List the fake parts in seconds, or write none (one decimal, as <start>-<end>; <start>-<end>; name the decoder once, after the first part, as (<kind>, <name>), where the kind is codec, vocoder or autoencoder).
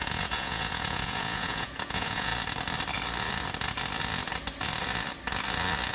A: 0.0-2.3 (vocoder, Vocos)